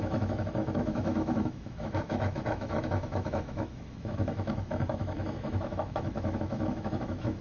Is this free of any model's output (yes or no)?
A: no